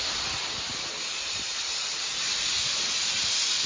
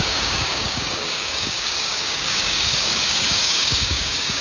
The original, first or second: first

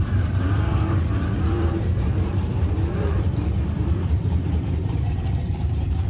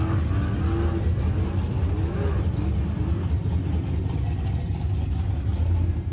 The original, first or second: second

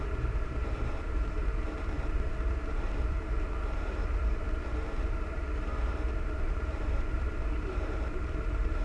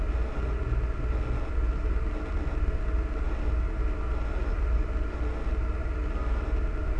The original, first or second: second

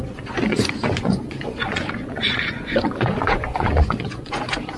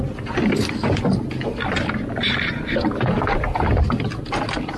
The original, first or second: second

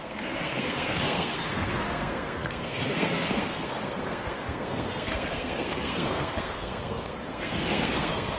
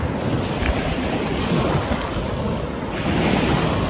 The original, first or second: second